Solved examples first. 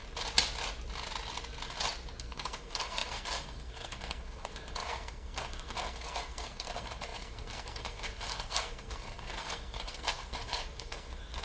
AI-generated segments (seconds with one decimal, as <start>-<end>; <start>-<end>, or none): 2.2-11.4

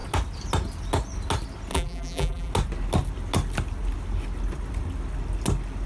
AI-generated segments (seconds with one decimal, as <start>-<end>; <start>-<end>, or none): 1.7-2.5

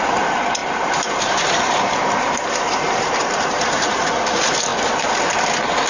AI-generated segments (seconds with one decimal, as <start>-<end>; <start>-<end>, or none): 0.6-4.1

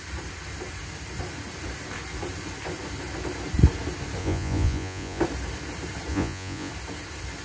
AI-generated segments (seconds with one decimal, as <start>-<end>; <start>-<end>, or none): 4.2-5.2; 6.1-6.7

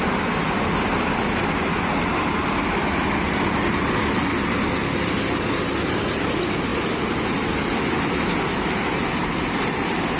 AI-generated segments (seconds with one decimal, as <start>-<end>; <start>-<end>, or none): none

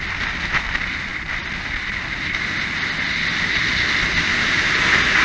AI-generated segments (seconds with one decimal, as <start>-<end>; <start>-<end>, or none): none